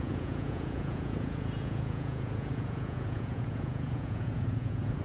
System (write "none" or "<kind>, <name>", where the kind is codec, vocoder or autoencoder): vocoder, Vocos